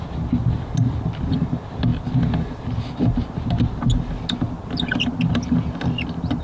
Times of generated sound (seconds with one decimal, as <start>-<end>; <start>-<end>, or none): none